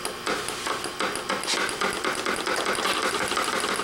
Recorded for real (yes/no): yes